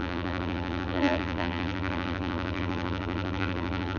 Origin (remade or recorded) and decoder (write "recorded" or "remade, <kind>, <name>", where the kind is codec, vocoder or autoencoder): remade, vocoder, BigVGAN v2